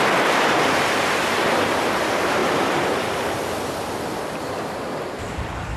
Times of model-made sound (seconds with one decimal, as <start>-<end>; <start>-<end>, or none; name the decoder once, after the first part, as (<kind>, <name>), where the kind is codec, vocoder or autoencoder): none